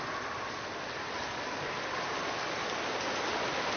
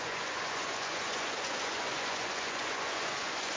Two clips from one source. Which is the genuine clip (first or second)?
first